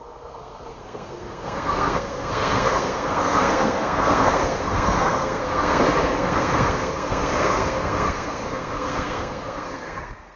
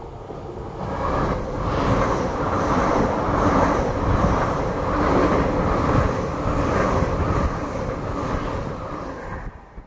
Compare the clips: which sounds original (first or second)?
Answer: second